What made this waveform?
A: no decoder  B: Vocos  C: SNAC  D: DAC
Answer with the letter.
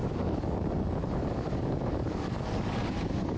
D